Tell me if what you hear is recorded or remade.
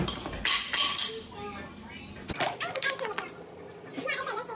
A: recorded